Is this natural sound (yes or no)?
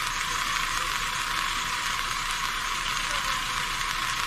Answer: yes